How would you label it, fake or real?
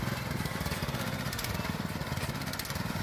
fake